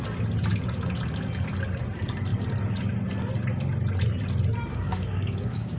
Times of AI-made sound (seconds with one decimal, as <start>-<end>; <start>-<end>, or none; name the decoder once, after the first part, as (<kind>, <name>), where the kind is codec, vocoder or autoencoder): 4.7-5.8 (codec, DAC)